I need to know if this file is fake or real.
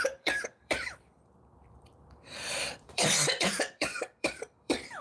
fake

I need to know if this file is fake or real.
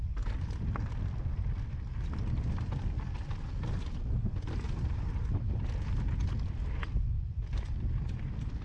real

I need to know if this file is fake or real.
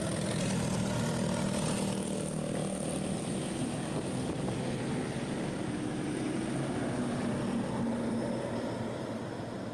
real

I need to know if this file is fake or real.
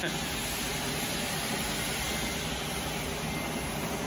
real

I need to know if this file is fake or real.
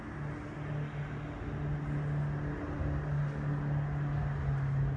real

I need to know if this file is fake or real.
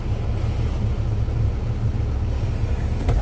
real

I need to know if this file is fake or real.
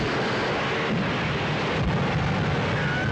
real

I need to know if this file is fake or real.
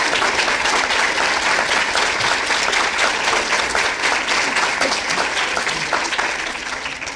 real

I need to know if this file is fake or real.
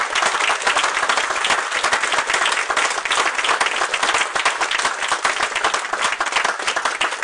real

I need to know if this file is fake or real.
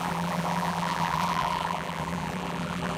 fake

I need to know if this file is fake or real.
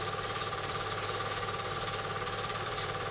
fake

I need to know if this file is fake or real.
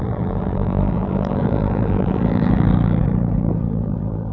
fake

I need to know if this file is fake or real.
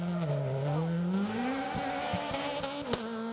real